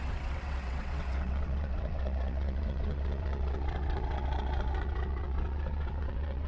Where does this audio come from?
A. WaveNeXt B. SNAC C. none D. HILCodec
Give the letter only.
A